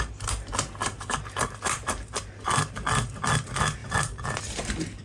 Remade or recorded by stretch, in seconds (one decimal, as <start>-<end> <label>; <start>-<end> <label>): 0.0-0.9 recorded; 0.9-2.2 remade; 2.2-3.8 recorded; 3.8-4.4 remade; 4.4-5.0 recorded